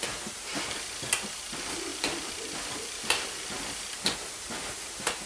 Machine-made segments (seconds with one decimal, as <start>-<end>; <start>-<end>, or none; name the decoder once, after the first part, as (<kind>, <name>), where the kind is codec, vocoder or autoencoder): 1.9-3.4 (vocoder, BigVGAN v2)